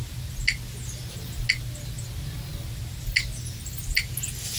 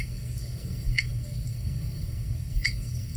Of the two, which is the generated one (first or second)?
second